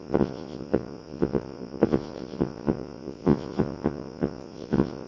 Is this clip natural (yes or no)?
no